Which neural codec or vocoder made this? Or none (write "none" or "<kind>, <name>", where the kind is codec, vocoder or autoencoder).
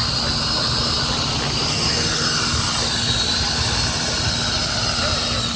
none